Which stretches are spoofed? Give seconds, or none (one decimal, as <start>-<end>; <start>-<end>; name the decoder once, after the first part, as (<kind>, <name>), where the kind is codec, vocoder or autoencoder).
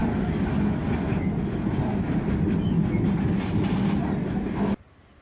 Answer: none